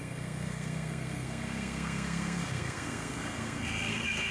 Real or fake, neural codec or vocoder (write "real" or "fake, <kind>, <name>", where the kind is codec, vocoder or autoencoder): fake, codec, SNAC